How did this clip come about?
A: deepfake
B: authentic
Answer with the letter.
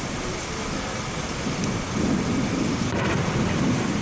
B